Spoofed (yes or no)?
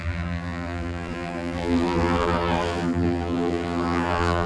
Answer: yes